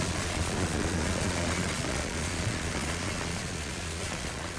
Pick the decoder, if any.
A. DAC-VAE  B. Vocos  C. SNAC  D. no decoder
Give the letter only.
B